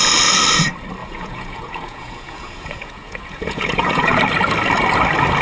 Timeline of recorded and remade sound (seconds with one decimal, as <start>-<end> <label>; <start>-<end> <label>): 0.0-1.0 recorded; 1.0-4.2 remade; 4.2-5.4 recorded